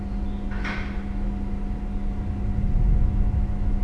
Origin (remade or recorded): recorded